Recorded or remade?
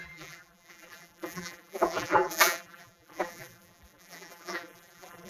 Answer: remade